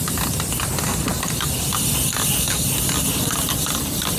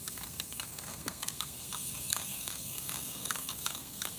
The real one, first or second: first